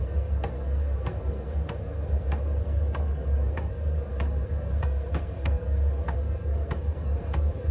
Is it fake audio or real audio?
fake